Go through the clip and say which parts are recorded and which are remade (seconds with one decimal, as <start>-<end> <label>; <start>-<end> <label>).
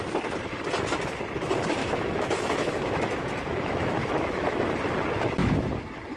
0.0-1.8 recorded; 1.8-4.7 remade; 4.7-6.2 recorded